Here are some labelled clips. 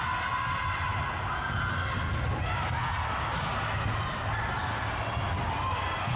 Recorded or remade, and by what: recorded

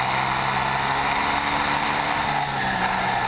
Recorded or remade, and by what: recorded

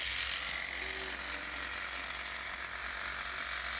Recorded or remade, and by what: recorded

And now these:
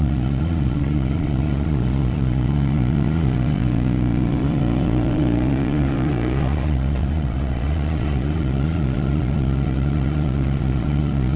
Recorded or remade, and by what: remade, vocoder, Vocos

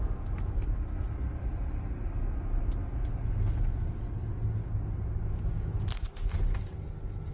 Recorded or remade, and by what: recorded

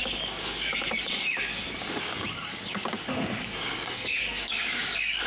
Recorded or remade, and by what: remade, codec, DAC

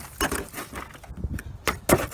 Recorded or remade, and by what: recorded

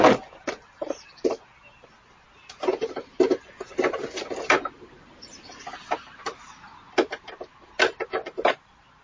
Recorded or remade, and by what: recorded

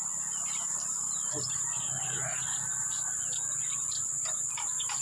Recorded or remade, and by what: remade, vocoder, BigVGAN v2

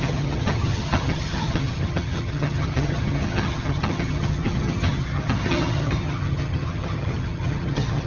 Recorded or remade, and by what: remade, vocoder, HiFi-GAN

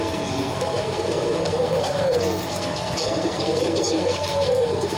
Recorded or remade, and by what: remade, codec, SNAC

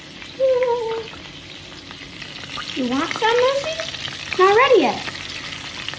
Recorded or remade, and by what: recorded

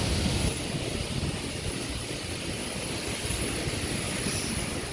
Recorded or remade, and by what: recorded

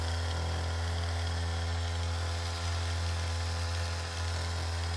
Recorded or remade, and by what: recorded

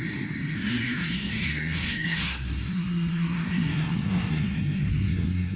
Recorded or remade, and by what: remade, codec, SNAC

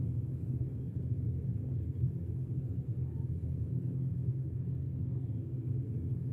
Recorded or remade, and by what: remade, codec, SNAC